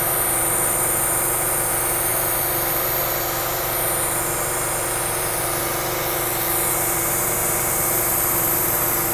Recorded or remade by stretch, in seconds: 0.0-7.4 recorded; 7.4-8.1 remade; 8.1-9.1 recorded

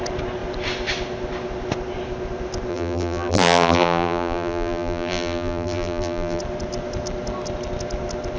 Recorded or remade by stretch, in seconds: 0.0-2.7 recorded; 2.7-6.4 remade; 6.4-8.4 recorded

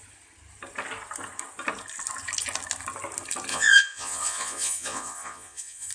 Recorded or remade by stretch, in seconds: 0.0-3.5 recorded; 3.5-5.9 remade